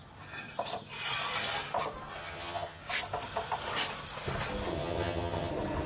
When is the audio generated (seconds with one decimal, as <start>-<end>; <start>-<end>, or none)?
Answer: 2.2-2.8; 4.7-5.5